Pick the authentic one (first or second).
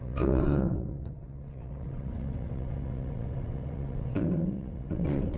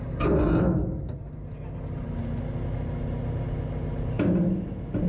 second